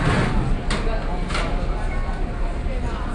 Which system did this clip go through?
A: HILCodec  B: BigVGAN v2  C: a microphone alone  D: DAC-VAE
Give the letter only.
C